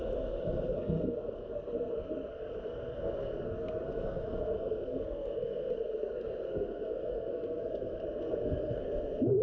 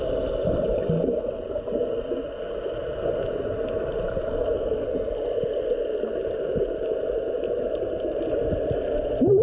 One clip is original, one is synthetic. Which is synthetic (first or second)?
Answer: first